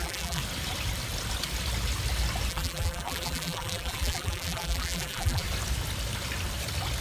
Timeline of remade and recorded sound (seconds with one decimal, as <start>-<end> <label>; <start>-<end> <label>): 0.0-0.4 remade; 0.4-2.5 recorded; 2.5-5.4 remade; 5.4-7.0 recorded